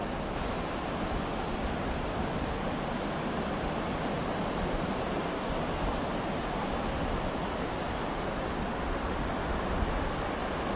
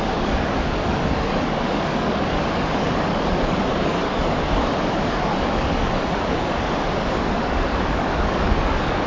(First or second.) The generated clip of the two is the second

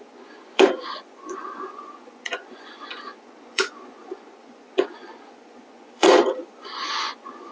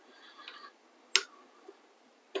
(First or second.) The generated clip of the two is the first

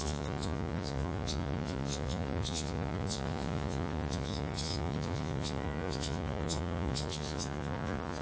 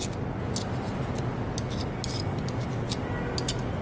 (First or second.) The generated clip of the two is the first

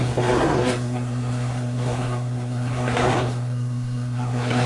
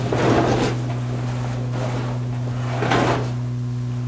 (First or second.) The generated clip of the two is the first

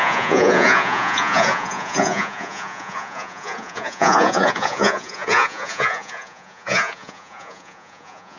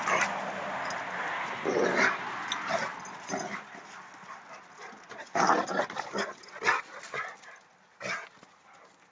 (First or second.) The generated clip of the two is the first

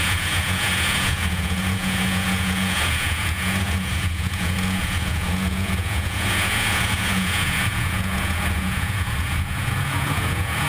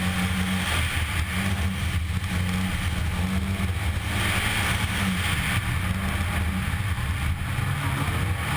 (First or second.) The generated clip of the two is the first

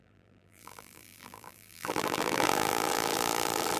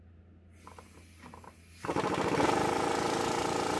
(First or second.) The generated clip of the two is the first